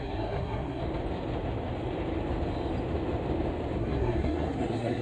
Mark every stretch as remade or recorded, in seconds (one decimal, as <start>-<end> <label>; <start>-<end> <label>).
0.0-0.8 remade; 0.8-3.8 recorded; 3.8-5.0 remade